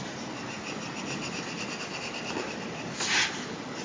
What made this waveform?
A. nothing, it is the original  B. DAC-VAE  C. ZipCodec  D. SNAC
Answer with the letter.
A